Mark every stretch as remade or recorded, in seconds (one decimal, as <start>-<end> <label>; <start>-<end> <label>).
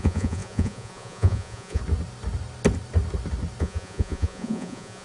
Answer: 0.0-1.8 remade; 1.8-3.6 recorded; 3.6-5.0 remade